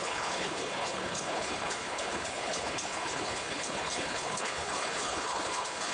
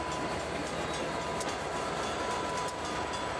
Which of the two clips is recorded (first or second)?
second